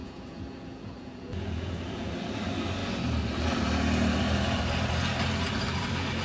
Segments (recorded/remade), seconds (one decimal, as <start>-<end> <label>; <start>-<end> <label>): 0.0-2.1 remade; 2.1-6.2 recorded